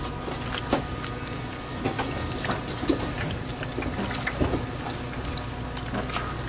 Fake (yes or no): no